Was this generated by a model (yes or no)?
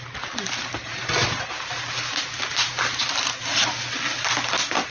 no